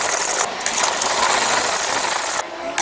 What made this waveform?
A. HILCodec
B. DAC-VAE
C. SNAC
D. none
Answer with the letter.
D